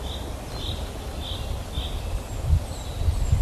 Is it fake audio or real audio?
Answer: real